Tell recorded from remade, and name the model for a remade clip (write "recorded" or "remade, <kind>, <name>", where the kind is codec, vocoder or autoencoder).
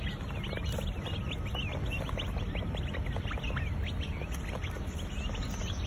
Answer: recorded